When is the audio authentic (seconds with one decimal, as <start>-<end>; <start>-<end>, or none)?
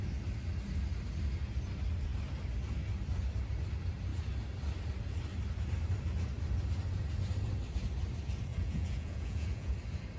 0.0-8.5; 9.7-10.2